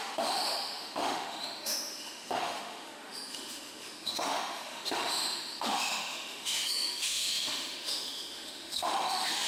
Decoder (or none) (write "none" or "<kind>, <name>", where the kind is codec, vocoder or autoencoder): autoencoder, DAC-VAE